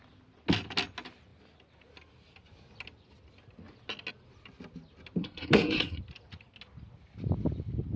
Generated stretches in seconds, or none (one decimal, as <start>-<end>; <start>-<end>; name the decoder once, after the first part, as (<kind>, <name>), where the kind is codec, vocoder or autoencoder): 5.2-6.0 (codec, SNAC)